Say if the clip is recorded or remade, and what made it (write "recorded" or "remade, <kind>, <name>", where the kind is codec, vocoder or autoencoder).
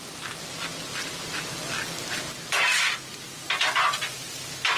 recorded